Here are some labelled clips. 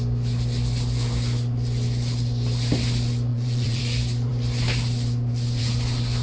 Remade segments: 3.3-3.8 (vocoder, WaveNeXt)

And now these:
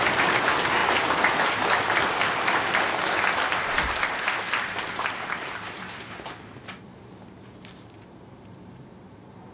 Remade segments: none

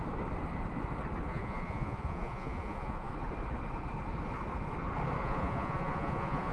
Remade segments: 1.3-3.1 (vocoder, Vocos); 5.2-6.5